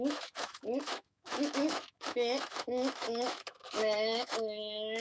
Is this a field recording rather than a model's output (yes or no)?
no